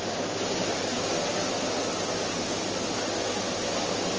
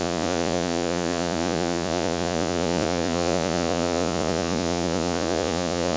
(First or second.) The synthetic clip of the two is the second